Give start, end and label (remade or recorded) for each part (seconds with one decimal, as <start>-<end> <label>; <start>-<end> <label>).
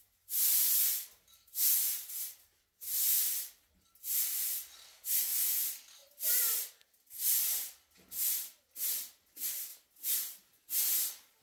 0.0-4.2 remade; 4.2-9.7 recorded; 9.7-10.8 remade; 10.8-11.4 recorded